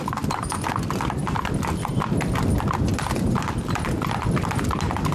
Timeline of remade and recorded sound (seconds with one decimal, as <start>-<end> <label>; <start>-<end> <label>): 0.0-5.1 recorded